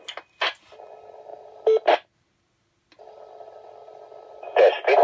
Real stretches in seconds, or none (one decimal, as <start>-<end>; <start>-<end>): 0.0-5.0